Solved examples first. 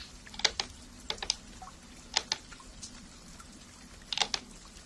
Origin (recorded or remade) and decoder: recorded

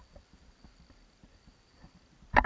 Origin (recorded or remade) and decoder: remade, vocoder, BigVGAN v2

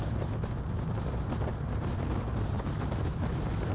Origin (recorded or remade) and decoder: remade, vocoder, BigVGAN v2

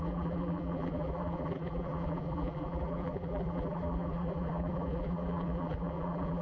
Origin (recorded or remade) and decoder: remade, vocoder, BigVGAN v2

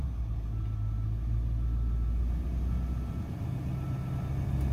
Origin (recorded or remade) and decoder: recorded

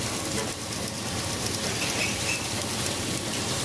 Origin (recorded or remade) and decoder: recorded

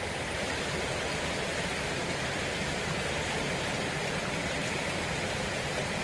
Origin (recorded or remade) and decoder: remade, vocoder, BigVGAN v2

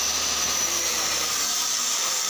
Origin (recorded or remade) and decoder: remade, vocoder, BigVGAN v2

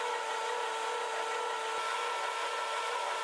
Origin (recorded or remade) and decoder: recorded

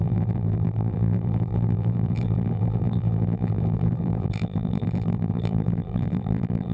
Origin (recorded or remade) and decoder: remade, vocoder, BigVGAN v2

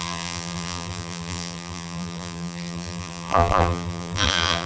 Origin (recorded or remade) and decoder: remade, vocoder, BigVGAN v2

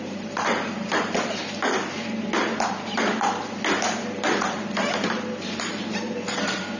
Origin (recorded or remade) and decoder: remade, vocoder, BigVGAN v2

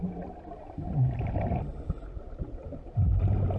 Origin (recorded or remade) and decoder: recorded